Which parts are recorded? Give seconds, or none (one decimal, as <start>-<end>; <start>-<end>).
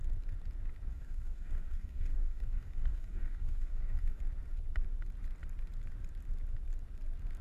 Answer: 0.0-0.9; 4.2-7.4